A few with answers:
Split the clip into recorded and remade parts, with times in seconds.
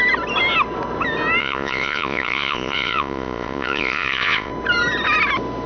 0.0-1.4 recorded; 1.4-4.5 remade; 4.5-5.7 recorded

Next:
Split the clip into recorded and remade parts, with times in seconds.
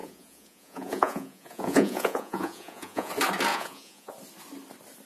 0.0-3.1 remade; 3.1-3.5 recorded; 3.5-4.1 remade; 4.1-5.1 recorded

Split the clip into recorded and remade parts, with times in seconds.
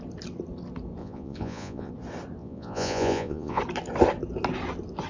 0.0-1.0 recorded; 1.0-1.9 remade; 1.9-2.4 recorded; 2.4-3.6 remade; 3.6-5.1 recorded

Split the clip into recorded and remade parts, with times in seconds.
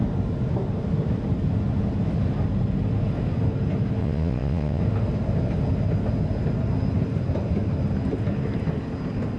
0.0-4.0 recorded; 4.0-4.8 remade; 4.8-9.4 recorded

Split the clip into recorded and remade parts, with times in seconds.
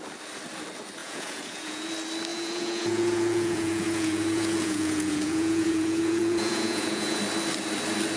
0.0-1.0 recorded; 1.0-1.9 remade; 1.9-2.3 recorded; 2.3-7.2 remade; 7.2-8.2 recorded